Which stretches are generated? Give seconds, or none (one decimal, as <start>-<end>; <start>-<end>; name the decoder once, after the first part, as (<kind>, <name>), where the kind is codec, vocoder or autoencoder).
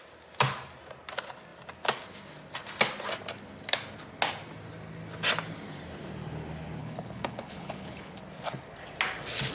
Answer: 6.8-8.2 (codec, HILCodec)